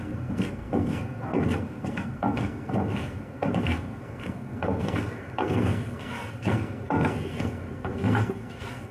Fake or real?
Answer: fake